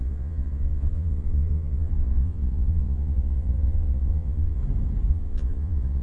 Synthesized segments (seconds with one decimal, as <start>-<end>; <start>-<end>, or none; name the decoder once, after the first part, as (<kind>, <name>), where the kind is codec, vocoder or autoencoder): 0.0-4.6 (vocoder, Vocos); 5.1-6.0